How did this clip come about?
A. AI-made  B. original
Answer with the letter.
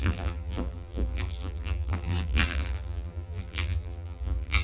A